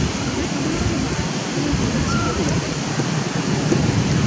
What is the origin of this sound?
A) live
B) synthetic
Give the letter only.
A